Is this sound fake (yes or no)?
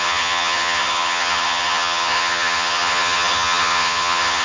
yes